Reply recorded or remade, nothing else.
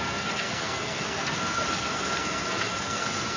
remade